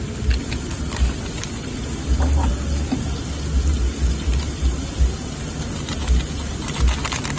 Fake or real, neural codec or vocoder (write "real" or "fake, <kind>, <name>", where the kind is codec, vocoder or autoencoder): real